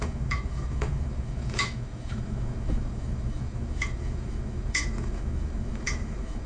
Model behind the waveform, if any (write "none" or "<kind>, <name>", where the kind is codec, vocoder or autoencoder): autoencoder, DAC-VAE